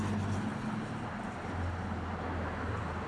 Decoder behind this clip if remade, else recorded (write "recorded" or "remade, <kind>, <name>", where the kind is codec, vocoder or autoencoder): recorded